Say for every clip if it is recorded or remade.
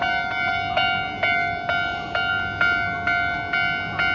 recorded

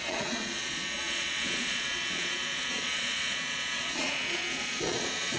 remade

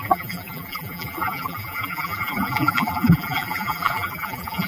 remade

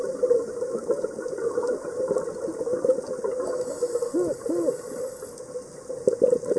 recorded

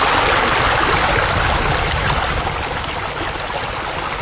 recorded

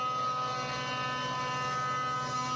recorded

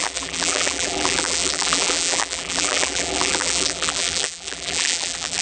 remade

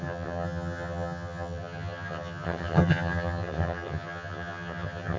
remade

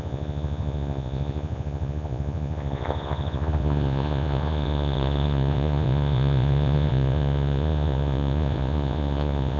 remade